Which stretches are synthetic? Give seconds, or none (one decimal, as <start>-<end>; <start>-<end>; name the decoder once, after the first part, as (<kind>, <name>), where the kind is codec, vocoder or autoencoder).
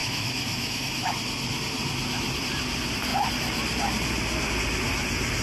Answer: 0.0-1.1 (autoencoder, DAC-VAE)